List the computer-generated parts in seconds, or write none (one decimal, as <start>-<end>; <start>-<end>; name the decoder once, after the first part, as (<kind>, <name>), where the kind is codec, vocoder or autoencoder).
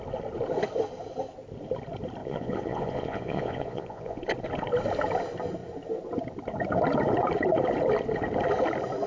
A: 2.2-4.2 (vocoder, Vocos)